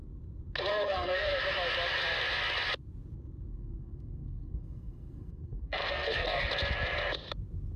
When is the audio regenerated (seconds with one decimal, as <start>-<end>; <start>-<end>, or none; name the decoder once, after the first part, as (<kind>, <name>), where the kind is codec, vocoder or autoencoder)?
0.7-1.4 (codec, SNAC); 3.5-6.5

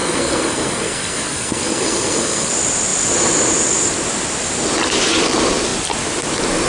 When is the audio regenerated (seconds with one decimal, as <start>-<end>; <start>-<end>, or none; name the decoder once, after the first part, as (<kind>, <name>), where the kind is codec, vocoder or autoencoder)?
0.0-2.5 (codec, SNAC)